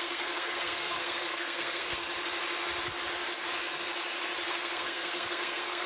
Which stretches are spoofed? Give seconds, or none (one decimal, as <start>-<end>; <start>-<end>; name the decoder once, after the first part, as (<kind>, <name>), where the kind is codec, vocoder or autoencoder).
0.0-2.0 (codec, SNAC); 4.5-5.9